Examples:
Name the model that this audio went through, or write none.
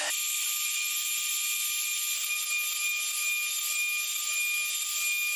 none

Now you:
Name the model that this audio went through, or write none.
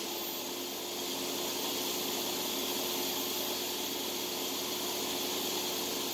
none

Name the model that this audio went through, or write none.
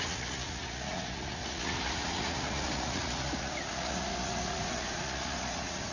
vocoder, Vocos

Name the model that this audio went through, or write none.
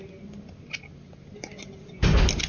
none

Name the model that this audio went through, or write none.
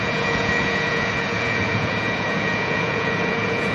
vocoder, Vocos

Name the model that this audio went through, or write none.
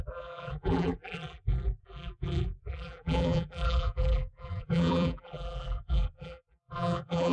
vocoder, BigVGAN v2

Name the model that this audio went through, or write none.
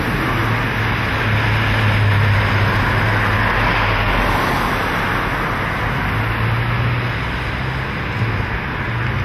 none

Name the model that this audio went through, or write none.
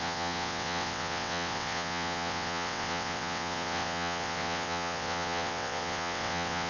vocoder, WaveNeXt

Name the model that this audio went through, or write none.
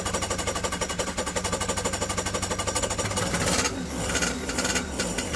none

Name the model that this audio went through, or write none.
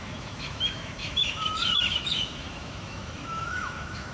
autoencoder, DAC-VAE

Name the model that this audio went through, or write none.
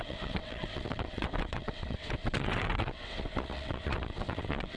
vocoder, WaveNeXt